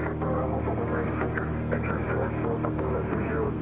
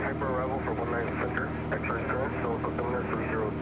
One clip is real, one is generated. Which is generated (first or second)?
first